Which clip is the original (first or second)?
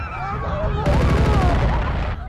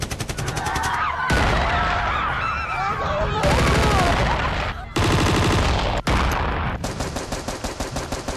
first